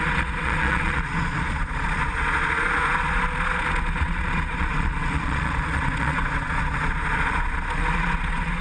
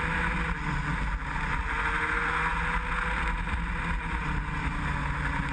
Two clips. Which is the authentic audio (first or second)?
second